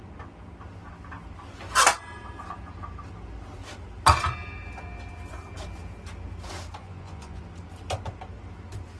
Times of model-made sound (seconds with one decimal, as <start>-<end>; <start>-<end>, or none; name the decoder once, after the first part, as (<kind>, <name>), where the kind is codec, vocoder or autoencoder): 6.8-7.4 (vocoder, Vocos)